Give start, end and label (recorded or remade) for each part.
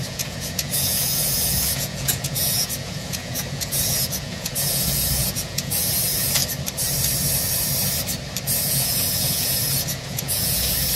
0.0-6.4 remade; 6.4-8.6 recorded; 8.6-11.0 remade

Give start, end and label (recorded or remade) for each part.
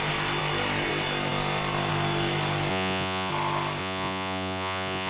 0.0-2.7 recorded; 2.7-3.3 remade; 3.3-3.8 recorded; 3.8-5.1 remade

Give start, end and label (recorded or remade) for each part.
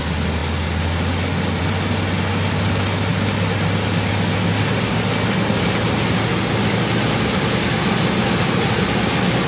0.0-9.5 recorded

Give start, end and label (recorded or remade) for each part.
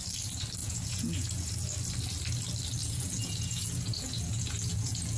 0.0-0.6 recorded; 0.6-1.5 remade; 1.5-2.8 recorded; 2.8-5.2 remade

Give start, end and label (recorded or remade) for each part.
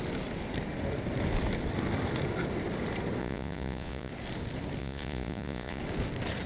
0.0-3.2 recorded; 3.2-4.1 remade; 4.1-4.8 recorded; 4.8-5.8 remade; 5.8-6.5 recorded